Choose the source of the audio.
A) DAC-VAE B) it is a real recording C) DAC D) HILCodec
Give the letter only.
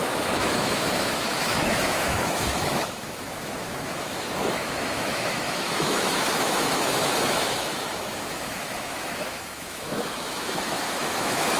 A